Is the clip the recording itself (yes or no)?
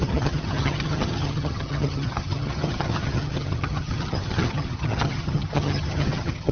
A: no